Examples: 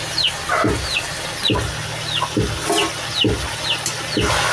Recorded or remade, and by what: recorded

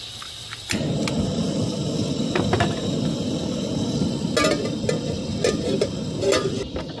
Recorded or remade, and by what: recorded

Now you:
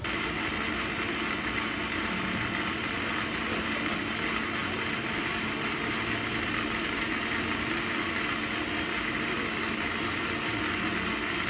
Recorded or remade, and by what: recorded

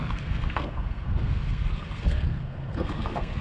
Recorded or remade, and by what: remade, codec, SNAC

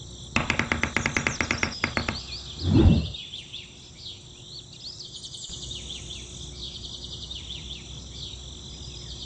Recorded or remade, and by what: recorded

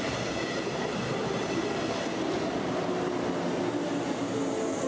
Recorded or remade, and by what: recorded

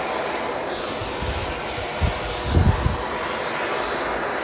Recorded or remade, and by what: recorded